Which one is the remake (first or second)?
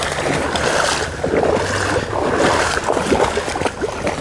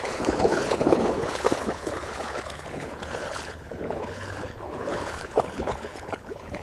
second